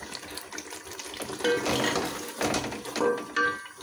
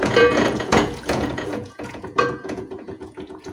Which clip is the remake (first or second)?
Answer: second